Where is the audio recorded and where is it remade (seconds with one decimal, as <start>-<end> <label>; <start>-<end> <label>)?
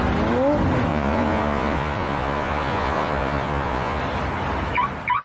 0.0-0.9 recorded; 0.9-4.0 remade; 4.0-5.2 recorded